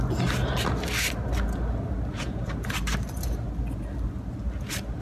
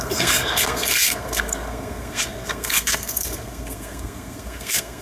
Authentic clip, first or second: first